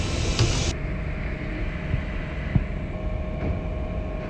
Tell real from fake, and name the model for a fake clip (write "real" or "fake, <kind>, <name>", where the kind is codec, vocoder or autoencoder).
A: real